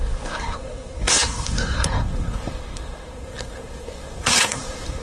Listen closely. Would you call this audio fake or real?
fake